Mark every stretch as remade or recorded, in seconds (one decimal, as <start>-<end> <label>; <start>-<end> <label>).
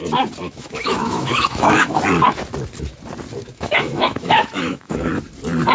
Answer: 0.0-0.4 recorded; 0.4-2.0 remade; 2.0-3.5 recorded; 3.5-5.1 remade; 5.1-5.7 recorded